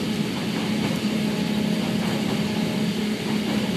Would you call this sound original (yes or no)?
yes